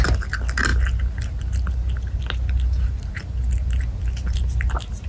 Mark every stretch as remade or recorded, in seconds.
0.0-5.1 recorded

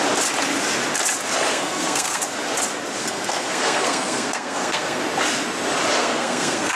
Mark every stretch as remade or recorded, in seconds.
0.0-1.5 recorded; 1.5-2.2 remade; 2.2-3.0 recorded; 3.0-5.0 remade; 5.0-6.0 recorded; 6.0-6.8 remade

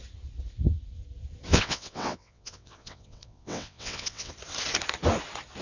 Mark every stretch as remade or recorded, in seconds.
0.0-1.5 recorded; 1.5-4.3 remade; 4.3-5.6 recorded

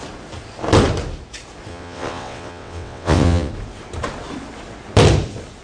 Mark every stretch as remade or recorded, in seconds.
0.0-1.7 recorded; 1.7-3.5 remade; 3.5-5.6 recorded

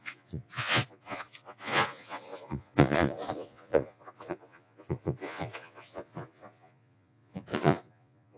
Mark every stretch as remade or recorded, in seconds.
0.0-8.4 remade

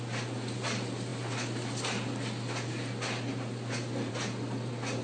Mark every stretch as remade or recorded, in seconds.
0.0-5.0 recorded

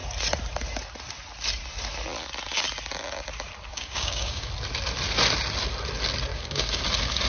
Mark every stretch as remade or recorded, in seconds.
0.0-3.7 recorded; 3.7-4.5 remade; 4.5-6.3 recorded; 6.3-6.8 remade; 6.8-7.3 recorded

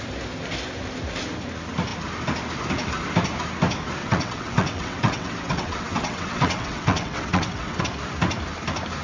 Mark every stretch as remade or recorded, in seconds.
0.0-4.0 recorded; 4.0-7.8 remade; 7.8-9.0 recorded